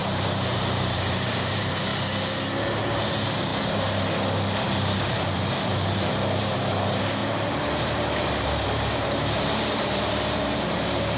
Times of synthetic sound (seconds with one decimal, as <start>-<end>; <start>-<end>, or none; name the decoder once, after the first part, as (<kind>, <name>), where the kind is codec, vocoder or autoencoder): 0.0-1.9 (vocoder, BigVGAN v2); 3.1-3.5; 5.0-11.2